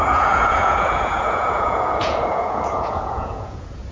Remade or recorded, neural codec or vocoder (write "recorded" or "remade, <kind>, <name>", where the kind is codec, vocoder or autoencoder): remade, vocoder, Vocos